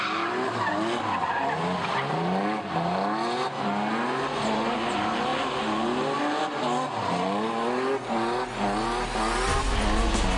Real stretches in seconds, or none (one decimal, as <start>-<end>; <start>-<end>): 0.0-10.4